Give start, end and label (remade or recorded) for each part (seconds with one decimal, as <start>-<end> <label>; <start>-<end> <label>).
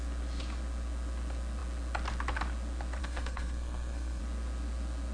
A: 0.0-3.0 recorded; 3.0-4.2 remade; 4.2-5.1 recorded